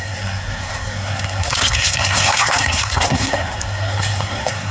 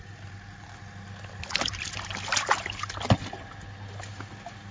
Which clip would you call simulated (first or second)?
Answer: first